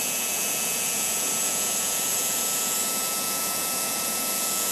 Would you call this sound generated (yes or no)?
yes